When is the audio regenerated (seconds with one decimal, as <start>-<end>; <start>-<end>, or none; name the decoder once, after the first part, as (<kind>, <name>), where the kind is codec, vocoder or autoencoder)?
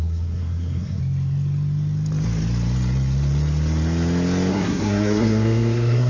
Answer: 0.0-1.0 (codec, SNAC); 4.5-6.1